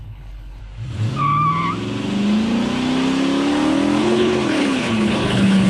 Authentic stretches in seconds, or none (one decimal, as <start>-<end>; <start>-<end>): 0.6-4.0